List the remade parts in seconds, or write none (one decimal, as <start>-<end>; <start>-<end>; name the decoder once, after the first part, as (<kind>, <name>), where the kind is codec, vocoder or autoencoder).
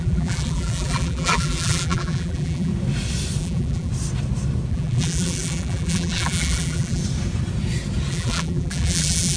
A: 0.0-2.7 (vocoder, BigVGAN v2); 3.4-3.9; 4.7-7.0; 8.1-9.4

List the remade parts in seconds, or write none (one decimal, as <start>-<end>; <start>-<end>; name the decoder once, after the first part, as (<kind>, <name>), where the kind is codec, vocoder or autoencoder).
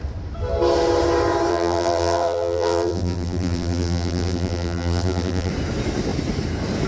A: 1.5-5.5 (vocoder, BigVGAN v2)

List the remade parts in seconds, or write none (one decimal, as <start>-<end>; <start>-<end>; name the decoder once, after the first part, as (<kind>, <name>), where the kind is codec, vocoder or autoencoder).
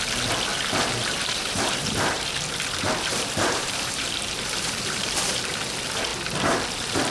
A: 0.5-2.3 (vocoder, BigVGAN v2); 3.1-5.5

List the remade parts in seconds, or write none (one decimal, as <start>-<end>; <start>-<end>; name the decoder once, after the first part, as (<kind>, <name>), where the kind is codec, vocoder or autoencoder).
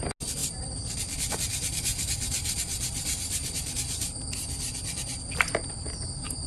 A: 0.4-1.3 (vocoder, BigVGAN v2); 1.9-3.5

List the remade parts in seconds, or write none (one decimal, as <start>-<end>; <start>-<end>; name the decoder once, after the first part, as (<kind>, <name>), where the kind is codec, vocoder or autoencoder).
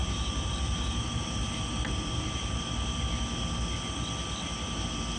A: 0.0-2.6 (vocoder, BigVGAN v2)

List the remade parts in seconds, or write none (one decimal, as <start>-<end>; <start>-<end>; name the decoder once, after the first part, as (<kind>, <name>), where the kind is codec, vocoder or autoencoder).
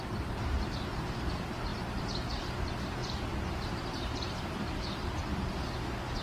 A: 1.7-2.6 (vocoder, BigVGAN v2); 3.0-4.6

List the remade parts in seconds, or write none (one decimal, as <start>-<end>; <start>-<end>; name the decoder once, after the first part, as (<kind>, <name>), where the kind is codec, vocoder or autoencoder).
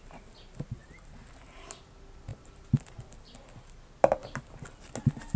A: 0.8-1.3 (vocoder, BigVGAN v2); 2.3-3.1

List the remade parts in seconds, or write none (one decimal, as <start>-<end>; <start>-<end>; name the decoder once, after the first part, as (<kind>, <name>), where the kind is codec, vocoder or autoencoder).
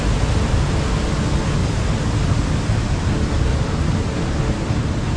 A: 3.5-4.8 (vocoder, BigVGAN v2)